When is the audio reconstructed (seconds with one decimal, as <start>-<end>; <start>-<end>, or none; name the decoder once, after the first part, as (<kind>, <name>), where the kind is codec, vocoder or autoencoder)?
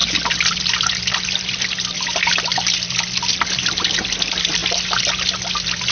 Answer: none